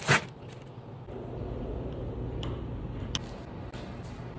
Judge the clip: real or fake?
real